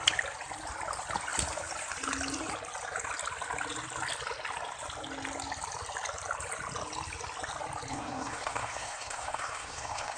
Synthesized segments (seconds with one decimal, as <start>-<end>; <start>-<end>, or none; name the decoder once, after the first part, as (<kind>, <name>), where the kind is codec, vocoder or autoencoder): 7.9-10.2 (codec, SNAC)